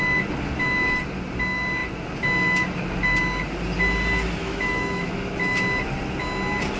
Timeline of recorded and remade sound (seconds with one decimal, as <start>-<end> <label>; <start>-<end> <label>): 0.0-4.4 recorded; 4.4-5.3 remade; 5.3-6.8 recorded